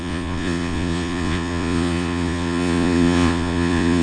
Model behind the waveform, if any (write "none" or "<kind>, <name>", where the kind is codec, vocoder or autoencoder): vocoder, Vocos